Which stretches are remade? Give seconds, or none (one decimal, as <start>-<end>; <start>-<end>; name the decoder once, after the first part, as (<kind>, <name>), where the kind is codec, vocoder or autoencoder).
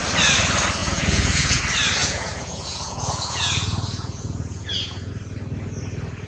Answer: 0.8-1.6 (vocoder, Vocos); 2.0-5.1